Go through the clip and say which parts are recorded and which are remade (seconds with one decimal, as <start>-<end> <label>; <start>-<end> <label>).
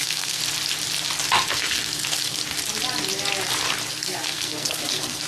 0.0-0.4 remade; 0.4-1.5 recorded; 1.5-2.4 remade; 2.4-3.9 recorded; 3.9-5.3 remade